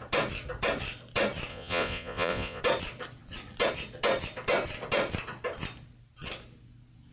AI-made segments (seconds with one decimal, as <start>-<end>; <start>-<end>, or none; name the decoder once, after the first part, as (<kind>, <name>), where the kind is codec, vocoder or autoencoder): 1.5-2.6 (vocoder, Vocos)